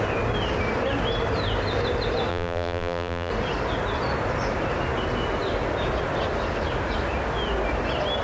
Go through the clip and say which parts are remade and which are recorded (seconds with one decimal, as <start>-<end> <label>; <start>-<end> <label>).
0.0-2.3 recorded; 2.3-3.3 remade; 3.3-8.2 recorded